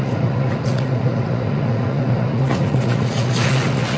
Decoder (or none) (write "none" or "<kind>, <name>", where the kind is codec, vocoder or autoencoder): vocoder, Vocos